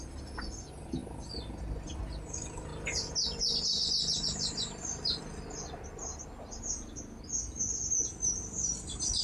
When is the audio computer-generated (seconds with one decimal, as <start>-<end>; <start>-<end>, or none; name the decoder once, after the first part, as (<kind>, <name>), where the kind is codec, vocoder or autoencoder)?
none